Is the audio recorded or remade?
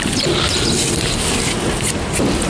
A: recorded